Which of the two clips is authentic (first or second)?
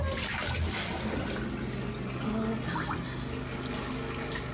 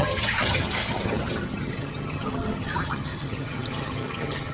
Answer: first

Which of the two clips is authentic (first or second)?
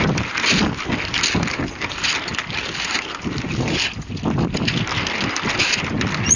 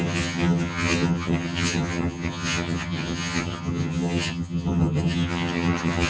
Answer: first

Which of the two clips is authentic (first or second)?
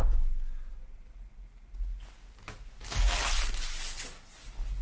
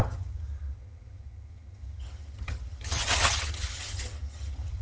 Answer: first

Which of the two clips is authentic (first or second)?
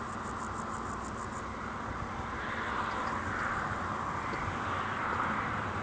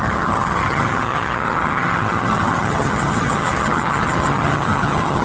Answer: first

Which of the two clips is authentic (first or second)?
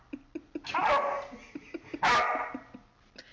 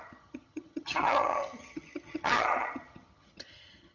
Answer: first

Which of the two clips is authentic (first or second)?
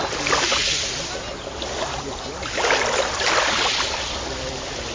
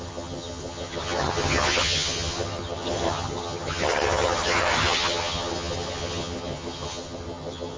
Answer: first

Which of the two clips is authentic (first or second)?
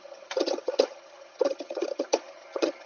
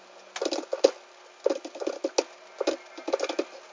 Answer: second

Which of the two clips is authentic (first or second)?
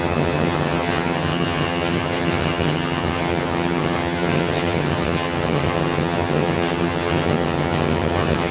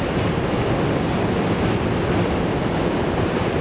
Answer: second